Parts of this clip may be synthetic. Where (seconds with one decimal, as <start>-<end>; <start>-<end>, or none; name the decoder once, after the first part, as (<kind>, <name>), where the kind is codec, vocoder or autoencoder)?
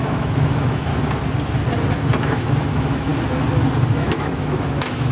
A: 0.0-0.9 (autoencoder, DAC-VAE); 2.2-3.1; 3.9-5.1